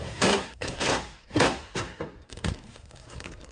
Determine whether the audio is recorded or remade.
remade